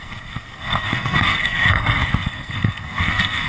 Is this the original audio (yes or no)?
no